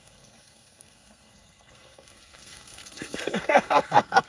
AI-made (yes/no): yes